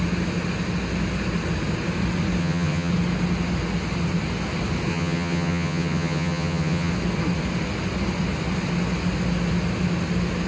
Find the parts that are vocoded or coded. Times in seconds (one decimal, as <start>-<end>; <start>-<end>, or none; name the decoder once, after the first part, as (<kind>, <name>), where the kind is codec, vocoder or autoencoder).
2.4-2.9 (vocoder, HiFi-GAN); 4.9-6.9